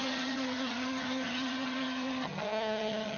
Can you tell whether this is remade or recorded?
remade